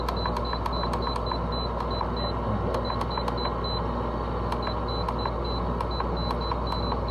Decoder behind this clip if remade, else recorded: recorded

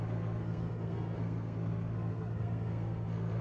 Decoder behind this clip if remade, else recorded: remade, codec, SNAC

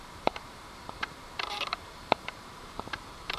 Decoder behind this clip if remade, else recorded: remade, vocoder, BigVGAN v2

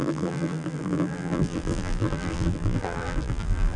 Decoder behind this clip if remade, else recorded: remade, vocoder, BigVGAN v2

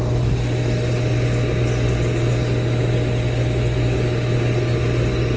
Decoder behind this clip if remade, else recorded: recorded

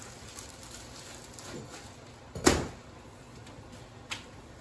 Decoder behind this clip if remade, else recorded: recorded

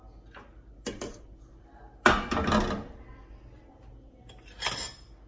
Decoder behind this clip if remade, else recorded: recorded